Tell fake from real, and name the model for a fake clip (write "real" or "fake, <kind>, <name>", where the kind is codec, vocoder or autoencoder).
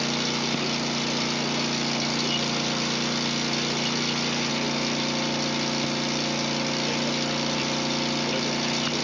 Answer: real